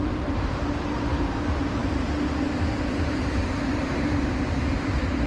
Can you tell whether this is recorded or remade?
remade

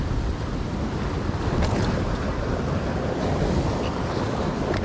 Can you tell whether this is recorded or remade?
recorded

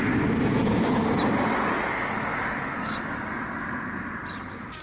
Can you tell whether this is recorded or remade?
recorded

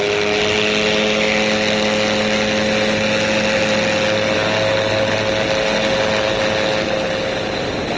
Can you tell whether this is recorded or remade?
recorded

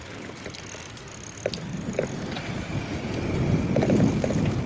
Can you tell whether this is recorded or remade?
recorded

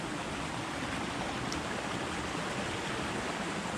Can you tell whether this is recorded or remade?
recorded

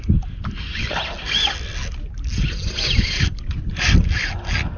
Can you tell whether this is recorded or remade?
recorded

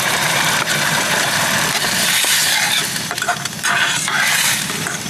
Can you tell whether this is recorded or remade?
remade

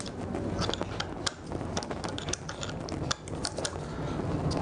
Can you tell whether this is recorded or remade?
recorded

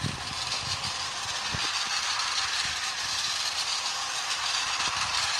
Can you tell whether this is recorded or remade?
remade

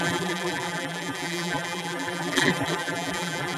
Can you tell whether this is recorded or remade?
remade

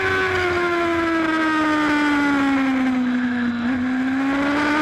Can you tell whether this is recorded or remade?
recorded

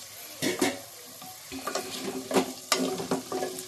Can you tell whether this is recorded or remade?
recorded